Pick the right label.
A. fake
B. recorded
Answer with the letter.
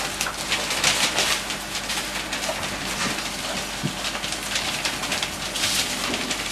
B